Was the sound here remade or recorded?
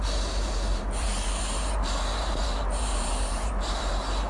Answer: remade